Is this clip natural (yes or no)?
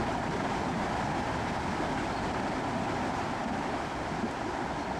yes